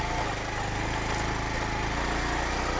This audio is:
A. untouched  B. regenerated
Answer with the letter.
A